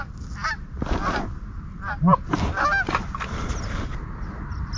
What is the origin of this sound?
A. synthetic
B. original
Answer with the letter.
B